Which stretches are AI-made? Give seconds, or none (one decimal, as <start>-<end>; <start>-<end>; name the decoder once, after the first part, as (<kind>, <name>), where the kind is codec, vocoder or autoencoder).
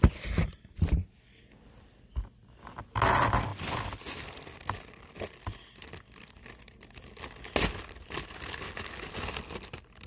none